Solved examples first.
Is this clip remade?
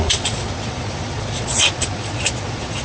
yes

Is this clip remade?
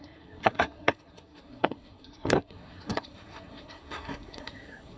yes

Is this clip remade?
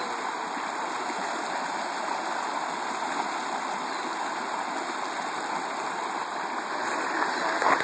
no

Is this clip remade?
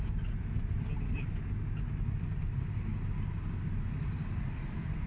no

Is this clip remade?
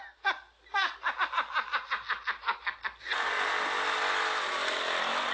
no